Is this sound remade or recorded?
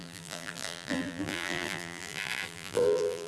remade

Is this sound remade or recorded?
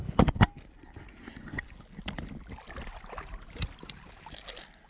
recorded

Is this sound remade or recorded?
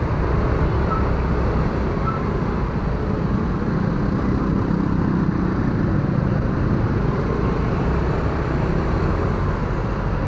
recorded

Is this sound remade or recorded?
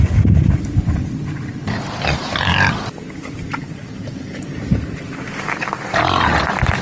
recorded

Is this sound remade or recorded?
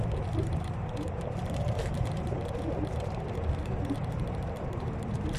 remade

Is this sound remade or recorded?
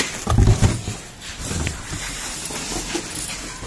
recorded